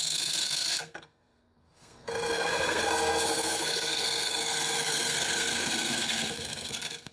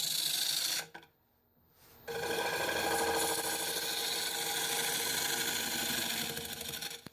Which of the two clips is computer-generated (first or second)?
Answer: first